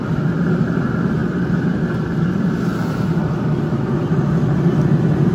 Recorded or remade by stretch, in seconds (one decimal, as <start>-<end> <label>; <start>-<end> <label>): 0.0-1.2 recorded; 1.2-3.2 remade; 3.2-5.3 recorded